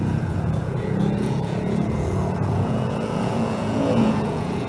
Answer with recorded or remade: remade